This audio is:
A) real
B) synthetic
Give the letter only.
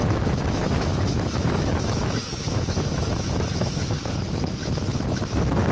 B